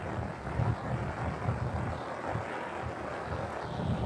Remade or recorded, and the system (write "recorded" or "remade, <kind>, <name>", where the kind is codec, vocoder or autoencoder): recorded